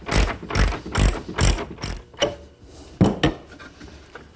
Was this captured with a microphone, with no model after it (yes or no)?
yes